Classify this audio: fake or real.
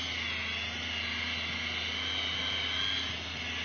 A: real